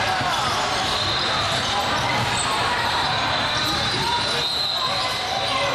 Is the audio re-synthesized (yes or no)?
no